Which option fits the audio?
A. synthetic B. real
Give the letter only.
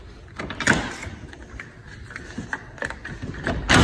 B